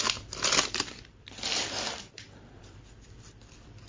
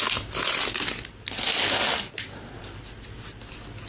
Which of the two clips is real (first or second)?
second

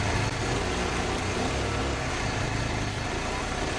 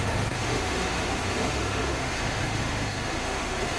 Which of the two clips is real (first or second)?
first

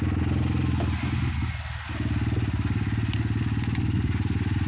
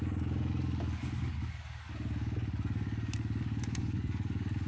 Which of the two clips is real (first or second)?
first